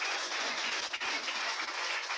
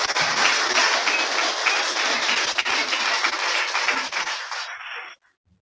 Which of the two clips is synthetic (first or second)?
first